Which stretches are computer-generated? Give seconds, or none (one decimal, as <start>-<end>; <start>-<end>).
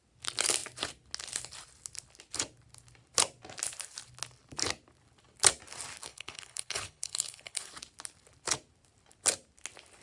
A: 6.1-7.7